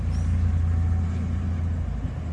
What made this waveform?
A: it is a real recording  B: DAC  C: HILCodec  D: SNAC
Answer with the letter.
A